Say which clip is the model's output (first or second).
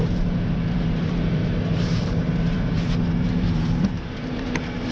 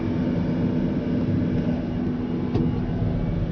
first